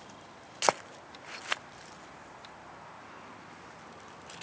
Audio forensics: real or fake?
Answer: real